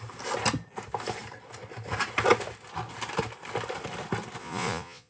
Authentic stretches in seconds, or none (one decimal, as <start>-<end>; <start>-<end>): 0.0-4.4